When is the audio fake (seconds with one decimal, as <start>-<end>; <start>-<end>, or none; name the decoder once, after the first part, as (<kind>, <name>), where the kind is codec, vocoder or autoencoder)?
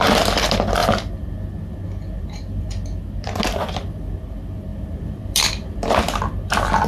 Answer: 4.7-6.0 (vocoder, BigVGAN v2)